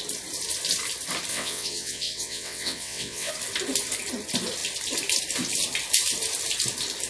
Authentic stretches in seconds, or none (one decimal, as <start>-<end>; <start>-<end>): 0.0-1.3; 3.3-7.1